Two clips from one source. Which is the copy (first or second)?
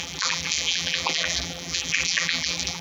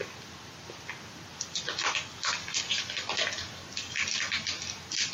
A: first